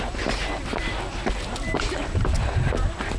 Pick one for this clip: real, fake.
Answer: real